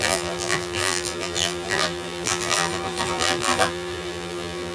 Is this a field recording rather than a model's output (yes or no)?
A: no